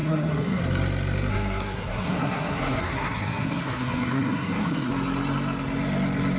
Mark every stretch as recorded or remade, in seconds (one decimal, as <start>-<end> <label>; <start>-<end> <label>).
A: 0.0-0.6 remade; 0.6-1.3 recorded; 1.3-4.9 remade; 4.9-6.4 recorded